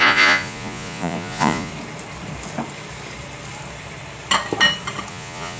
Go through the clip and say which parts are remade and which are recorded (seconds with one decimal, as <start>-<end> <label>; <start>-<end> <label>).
0.0-1.7 remade; 1.7-5.1 recorded; 5.1-5.6 remade